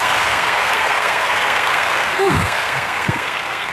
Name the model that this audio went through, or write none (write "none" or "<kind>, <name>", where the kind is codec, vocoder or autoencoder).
codec, SNAC